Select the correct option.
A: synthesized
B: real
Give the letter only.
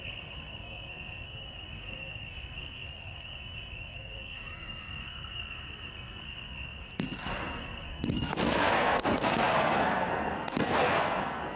A